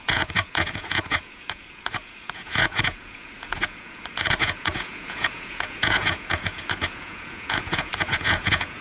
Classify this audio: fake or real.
fake